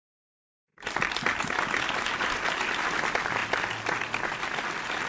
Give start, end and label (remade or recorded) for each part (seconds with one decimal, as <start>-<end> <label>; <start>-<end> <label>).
0.0-5.1 recorded